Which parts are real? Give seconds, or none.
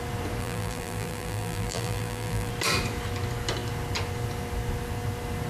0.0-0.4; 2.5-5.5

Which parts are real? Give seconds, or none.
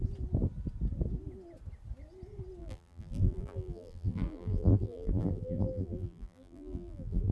0.0-2.6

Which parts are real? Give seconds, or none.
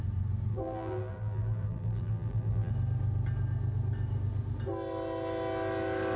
0.0-0.5; 2.7-6.2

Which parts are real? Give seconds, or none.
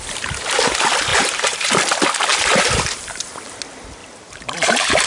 0.0-1.1; 1.7-2.3; 3.3-4.0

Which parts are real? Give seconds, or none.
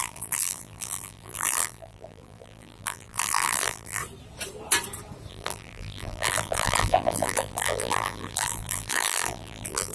4.0-5.3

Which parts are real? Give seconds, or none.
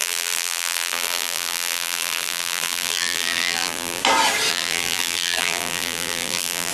4.0-4.5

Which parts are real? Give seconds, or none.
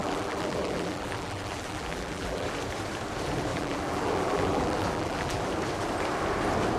2.5-3.5; 5.5-6.8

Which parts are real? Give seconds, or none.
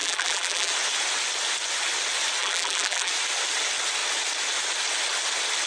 0.7-2.4; 3.1-5.7